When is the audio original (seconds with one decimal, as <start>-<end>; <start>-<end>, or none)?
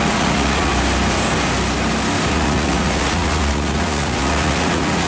0.7-2.3